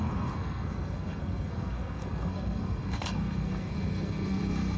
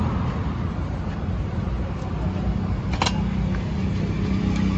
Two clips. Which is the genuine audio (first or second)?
second